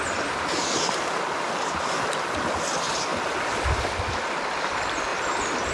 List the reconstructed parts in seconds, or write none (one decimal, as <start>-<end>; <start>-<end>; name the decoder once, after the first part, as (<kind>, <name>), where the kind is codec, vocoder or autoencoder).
5.1-5.7 (vocoder, BigVGAN v2)